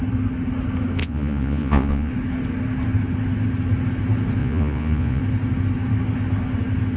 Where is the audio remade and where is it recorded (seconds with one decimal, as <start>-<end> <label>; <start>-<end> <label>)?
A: 0.0-1.0 recorded; 1.0-2.1 remade; 2.1-4.4 recorded; 4.4-5.2 remade; 5.2-7.0 recorded